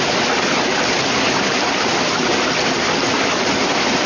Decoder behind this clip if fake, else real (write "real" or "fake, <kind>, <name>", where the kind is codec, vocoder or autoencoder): real